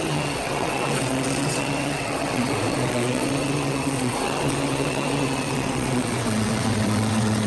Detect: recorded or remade remade